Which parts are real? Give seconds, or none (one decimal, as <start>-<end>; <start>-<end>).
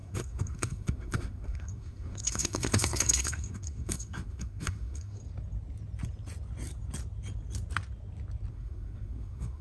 5.2-8.5